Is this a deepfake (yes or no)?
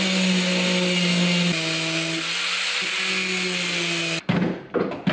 no